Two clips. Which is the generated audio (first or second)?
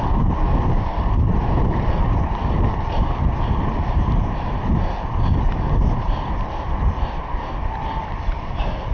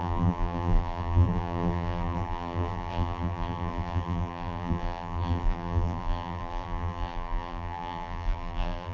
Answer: second